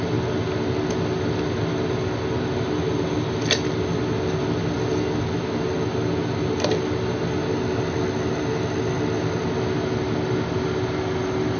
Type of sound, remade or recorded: recorded